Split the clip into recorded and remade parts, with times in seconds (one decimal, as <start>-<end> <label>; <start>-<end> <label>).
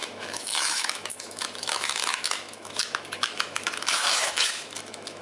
0.0-5.2 remade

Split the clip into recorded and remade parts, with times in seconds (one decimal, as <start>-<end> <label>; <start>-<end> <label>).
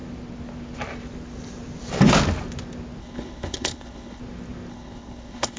0.0-3.0 recorded; 3.0-4.2 remade; 4.2-4.7 recorded; 4.7-5.6 remade